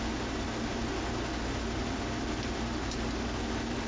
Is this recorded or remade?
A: recorded